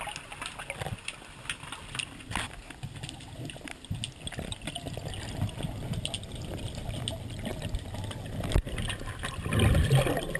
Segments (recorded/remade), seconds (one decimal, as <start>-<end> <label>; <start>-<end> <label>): 0.0-10.4 recorded